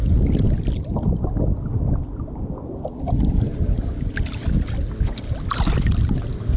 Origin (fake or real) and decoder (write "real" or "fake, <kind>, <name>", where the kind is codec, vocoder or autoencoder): real